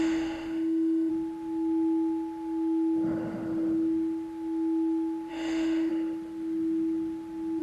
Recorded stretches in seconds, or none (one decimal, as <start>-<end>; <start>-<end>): 1.1-5.3; 5.9-7.6